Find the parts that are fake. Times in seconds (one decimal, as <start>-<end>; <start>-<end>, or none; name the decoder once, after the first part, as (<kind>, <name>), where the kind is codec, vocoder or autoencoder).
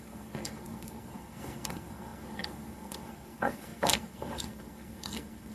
0.0-5.5 (codec, SNAC)